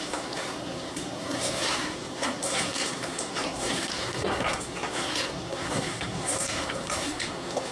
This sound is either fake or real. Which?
fake